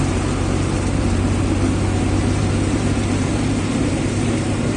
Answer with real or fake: fake